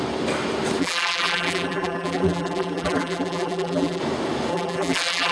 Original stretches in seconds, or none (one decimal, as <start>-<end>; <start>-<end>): 0.0-0.8; 4.0-4.5